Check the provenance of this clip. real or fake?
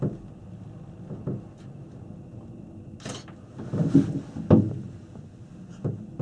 real